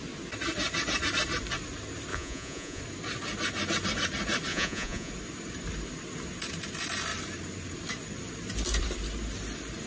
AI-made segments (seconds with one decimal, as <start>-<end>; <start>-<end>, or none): 2.1-2.8; 4.5-5.1